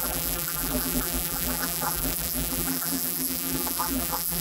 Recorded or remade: remade